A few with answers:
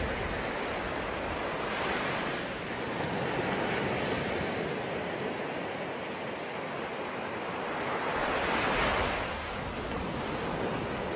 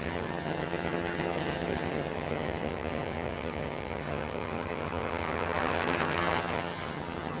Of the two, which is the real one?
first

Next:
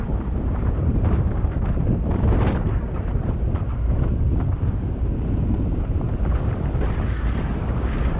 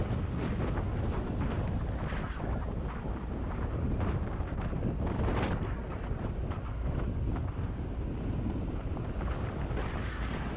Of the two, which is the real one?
second